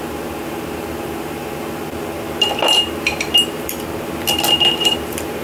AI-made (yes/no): yes